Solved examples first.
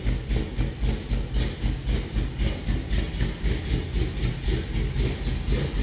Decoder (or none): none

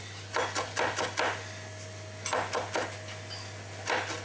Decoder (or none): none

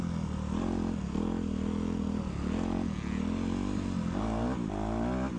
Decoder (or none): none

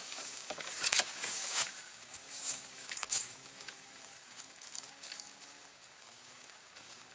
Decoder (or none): codec, DAC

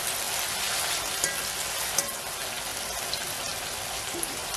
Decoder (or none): none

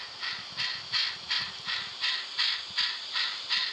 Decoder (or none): vocoder, BigVGAN v2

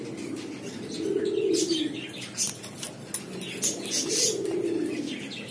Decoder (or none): none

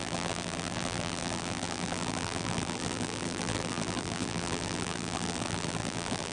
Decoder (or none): vocoder, BigVGAN v2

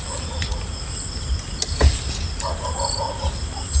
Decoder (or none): none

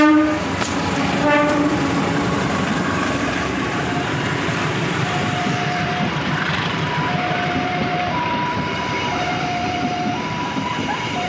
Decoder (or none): vocoder, BigVGAN v2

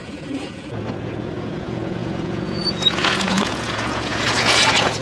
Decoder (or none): vocoder, Vocos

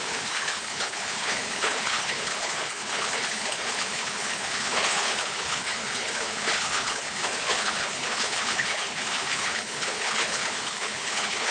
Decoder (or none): codec, HILCodec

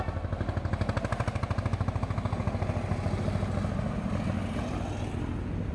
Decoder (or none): none